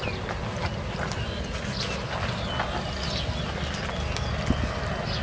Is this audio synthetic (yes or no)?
no